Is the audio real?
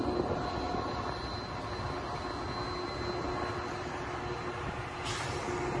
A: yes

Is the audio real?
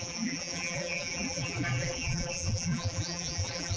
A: no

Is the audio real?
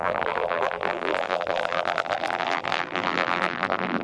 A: no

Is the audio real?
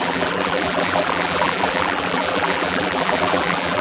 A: no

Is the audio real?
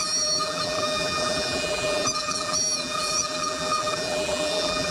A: no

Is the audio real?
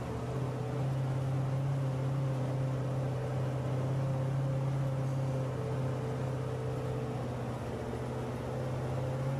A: yes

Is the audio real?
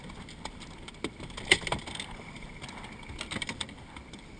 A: yes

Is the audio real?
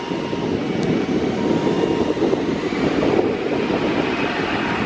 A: yes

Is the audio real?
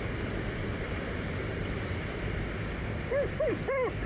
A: yes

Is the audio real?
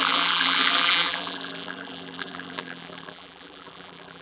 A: no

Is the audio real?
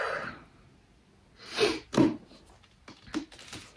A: yes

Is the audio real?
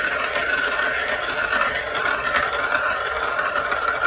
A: no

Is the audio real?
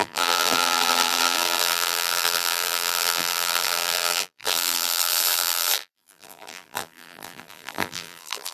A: no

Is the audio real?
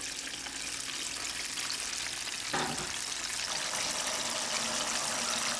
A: yes